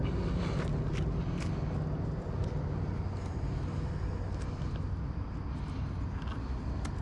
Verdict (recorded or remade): recorded